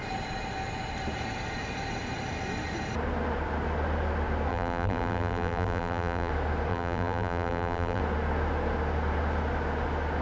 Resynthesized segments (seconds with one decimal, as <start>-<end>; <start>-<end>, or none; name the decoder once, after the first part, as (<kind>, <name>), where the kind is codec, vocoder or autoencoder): 4.5-6.3 (vocoder, BigVGAN v2); 6.7-8.0